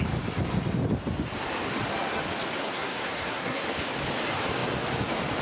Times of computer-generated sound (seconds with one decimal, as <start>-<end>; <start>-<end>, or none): 2.6-3.6